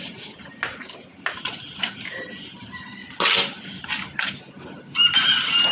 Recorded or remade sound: recorded